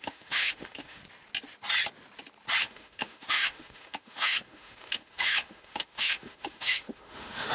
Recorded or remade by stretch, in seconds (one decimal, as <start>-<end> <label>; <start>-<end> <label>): 0.0-1.0 remade; 1.0-2.6 recorded; 2.6-7.5 remade